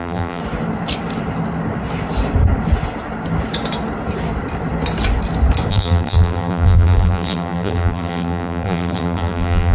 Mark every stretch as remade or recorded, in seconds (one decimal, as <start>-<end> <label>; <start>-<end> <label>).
0.0-0.4 remade; 0.4-5.7 recorded; 5.7-9.7 remade